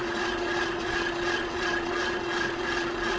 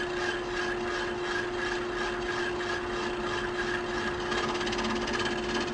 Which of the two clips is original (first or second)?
second